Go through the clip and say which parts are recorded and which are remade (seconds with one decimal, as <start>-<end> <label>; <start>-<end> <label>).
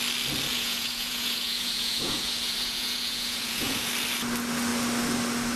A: 0.0-0.5 recorded; 0.5-3.9 remade; 3.9-5.6 recorded